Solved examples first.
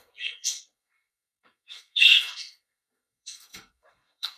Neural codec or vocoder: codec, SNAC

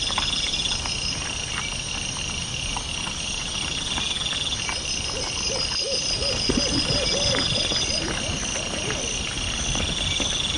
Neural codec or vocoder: none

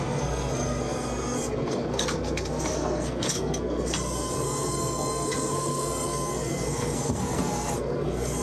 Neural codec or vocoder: codec, SNAC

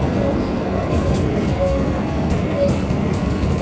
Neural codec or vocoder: codec, SNAC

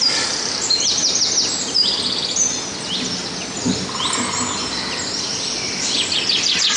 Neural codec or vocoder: none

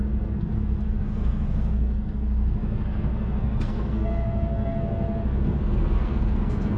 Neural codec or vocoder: codec, SNAC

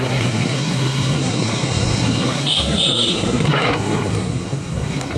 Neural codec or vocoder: codec, SNAC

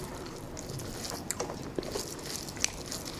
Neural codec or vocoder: none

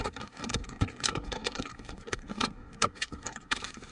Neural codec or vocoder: codec, SNAC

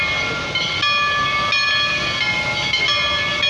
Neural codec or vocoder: none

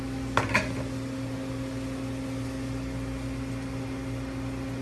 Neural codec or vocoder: none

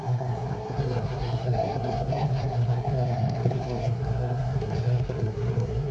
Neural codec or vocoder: codec, SNAC